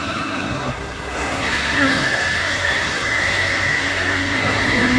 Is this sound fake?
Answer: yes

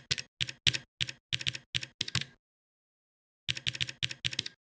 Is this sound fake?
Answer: no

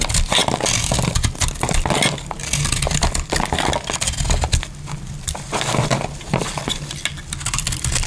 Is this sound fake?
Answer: no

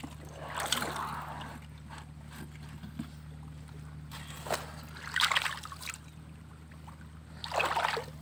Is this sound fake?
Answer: no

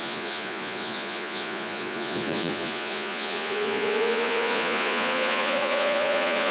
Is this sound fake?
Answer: yes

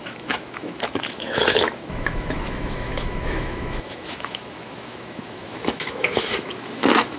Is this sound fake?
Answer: yes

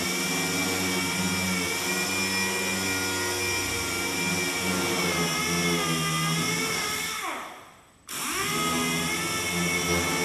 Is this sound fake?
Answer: no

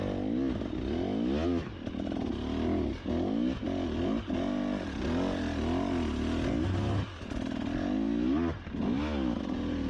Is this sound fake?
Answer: no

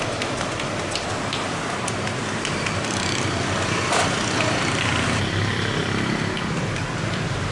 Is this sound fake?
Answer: yes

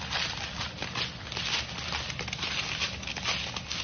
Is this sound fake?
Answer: no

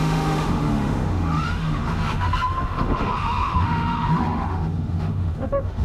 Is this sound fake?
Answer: yes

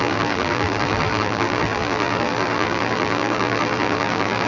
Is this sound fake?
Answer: yes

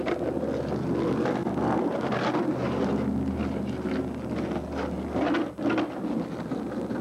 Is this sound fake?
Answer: no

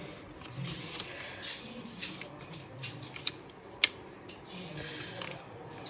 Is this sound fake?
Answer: no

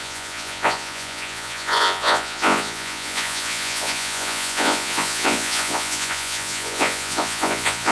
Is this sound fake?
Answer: yes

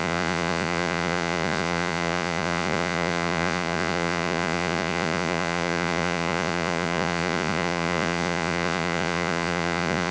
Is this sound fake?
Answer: yes